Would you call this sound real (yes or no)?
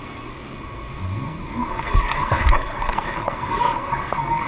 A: no